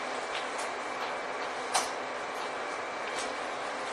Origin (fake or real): real